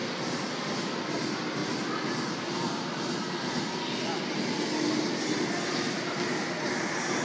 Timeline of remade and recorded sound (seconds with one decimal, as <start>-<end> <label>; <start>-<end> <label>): 0.0-0.8 recorded; 0.8-1.6 remade; 1.6-5.9 recorded; 5.9-7.2 remade